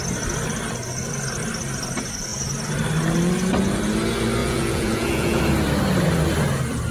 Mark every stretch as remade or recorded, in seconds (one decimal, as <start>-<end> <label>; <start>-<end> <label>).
0.0-4.4 recorded; 4.4-5.4 remade; 5.4-6.9 recorded